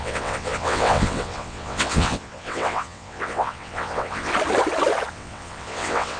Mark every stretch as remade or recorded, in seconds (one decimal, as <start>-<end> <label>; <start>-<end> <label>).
0.0-4.3 remade; 4.3-5.1 recorded; 5.1-6.2 remade